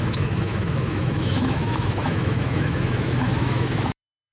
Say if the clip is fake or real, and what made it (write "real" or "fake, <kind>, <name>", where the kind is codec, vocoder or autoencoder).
fake, autoencoder, DAC-VAE